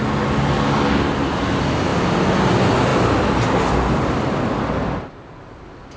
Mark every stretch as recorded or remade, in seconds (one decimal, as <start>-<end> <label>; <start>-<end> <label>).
0.0-6.0 recorded